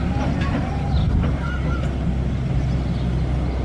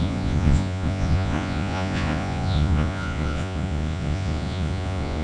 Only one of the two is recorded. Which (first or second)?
first